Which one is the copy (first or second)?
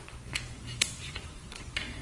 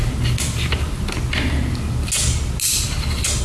first